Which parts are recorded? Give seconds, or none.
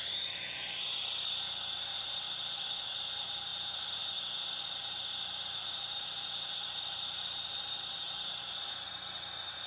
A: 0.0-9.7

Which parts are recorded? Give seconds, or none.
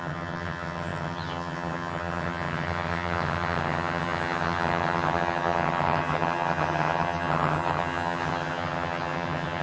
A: none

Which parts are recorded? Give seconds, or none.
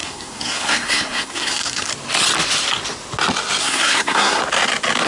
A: 1.9-3.6; 4.4-5.1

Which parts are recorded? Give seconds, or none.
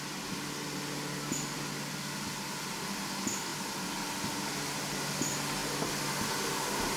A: 0.0-7.0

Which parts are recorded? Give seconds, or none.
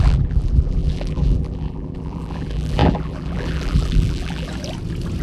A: 4.5-5.2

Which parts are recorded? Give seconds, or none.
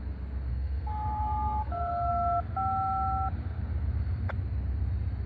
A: 0.0-0.5; 2.1-5.3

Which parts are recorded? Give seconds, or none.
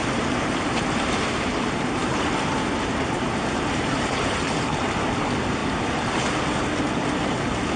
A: 4.7-7.8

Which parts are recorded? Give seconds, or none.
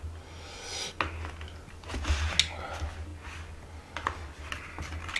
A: 0.0-5.2